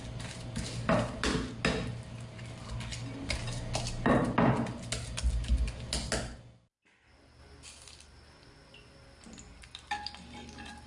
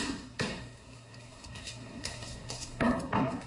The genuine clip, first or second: first